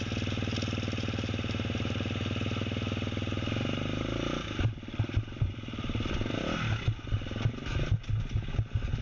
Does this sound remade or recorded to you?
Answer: recorded